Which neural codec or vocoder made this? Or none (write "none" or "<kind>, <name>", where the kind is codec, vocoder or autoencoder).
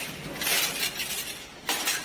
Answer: none